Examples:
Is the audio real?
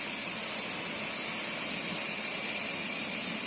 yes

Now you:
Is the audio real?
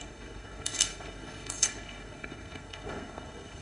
no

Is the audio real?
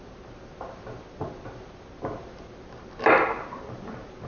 yes